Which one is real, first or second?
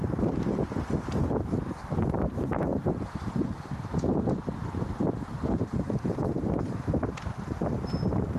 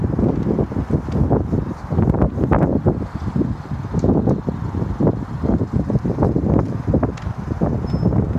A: second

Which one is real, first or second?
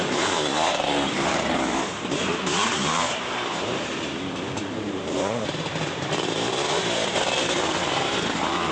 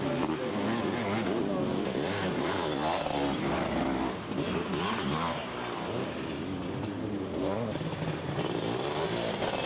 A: second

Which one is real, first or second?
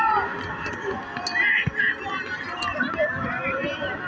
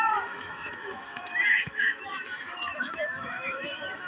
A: first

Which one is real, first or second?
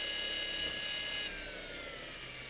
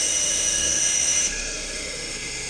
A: first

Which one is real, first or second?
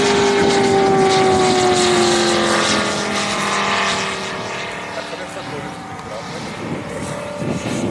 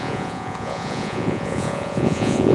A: first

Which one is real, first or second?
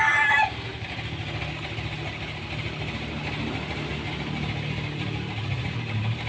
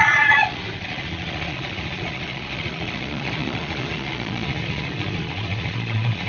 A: first